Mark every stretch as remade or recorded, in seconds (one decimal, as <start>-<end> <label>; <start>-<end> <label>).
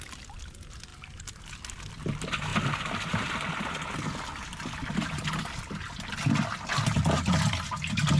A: 0.0-8.2 recorded